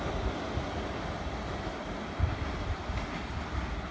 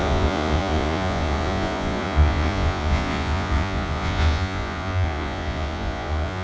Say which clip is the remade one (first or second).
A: second